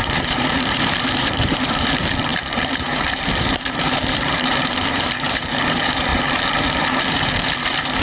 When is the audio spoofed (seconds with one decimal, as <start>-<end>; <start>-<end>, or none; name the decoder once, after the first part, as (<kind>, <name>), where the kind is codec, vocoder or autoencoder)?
0.0-8.0 (vocoder, BigVGAN v2)